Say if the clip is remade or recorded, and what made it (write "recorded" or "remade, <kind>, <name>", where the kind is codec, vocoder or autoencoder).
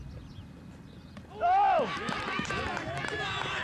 recorded